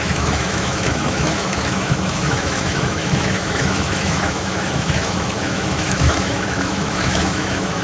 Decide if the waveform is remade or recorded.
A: remade